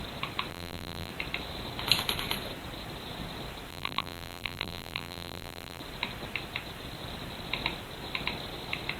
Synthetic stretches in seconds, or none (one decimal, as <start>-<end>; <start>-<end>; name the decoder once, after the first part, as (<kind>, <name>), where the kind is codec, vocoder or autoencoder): 0.5-1.1 (vocoder, BigVGAN v2); 3.7-5.8